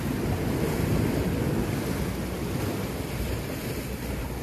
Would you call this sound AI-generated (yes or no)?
no